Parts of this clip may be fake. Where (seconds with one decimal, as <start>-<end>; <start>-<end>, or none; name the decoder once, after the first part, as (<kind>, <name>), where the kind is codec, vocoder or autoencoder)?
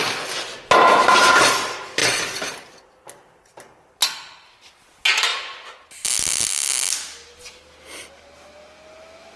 none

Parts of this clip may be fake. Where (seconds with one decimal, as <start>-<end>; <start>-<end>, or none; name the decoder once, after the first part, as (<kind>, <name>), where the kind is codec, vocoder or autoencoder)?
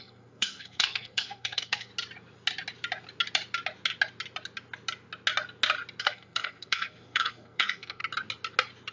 0.0-1.9 (codec, SNAC); 6.0-8.0